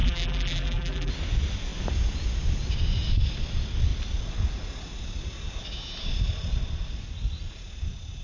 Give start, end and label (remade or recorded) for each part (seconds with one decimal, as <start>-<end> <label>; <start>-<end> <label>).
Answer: 0.0-1.1 remade; 1.1-8.2 recorded